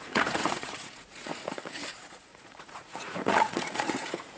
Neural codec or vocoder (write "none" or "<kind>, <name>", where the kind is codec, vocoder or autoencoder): vocoder, Vocos